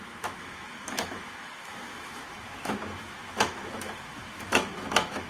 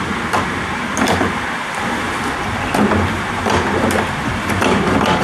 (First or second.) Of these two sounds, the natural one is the second